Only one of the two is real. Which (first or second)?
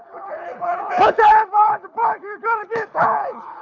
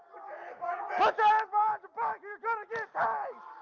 second